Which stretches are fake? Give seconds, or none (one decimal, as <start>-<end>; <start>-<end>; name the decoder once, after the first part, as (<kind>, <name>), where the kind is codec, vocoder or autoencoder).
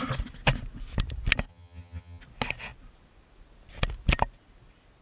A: 1.5-2.2 (vocoder, HiFi-GAN)